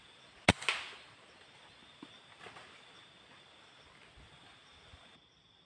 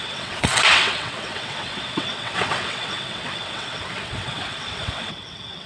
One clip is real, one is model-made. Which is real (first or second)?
first